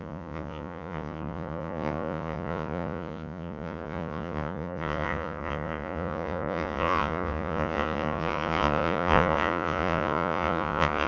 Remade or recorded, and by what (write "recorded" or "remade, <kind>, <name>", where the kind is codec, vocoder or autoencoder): remade, vocoder, Vocos